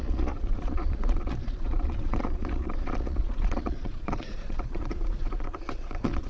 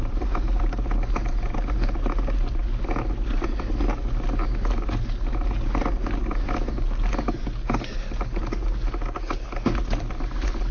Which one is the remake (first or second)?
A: first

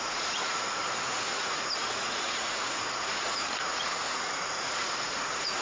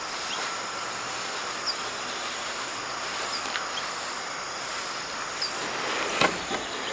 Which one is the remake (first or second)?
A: first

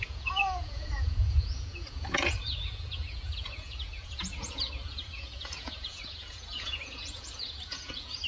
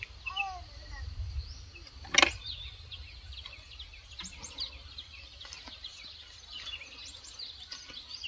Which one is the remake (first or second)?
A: first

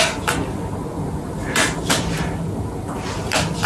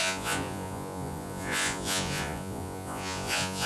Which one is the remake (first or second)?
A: second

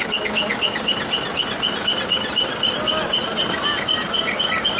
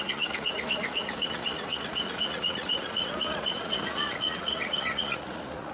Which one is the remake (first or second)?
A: second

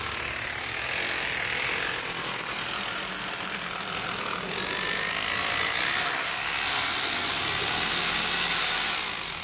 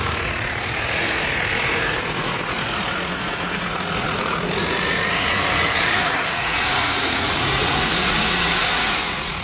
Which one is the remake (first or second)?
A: second